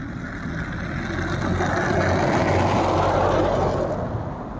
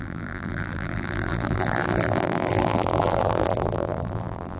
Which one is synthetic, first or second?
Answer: second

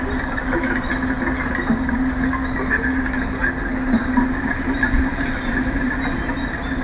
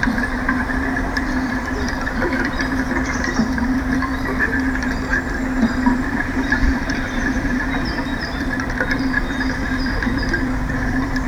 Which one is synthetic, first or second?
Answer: second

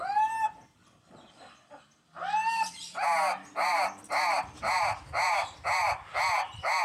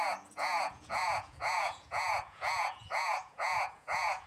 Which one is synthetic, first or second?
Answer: second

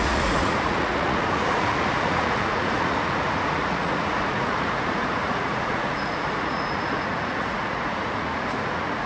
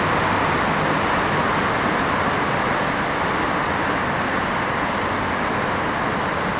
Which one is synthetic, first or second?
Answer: first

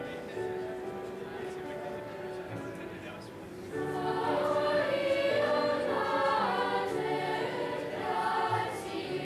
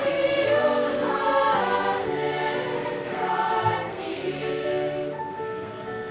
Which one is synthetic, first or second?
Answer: second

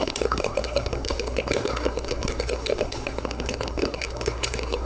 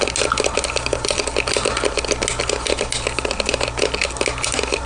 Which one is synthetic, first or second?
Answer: first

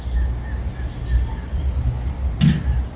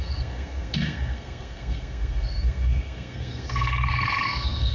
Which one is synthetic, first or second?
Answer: second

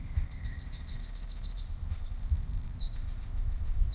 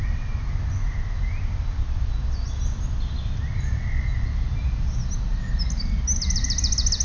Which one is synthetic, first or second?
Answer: first